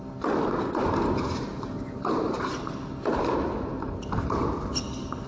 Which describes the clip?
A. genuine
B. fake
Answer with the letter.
A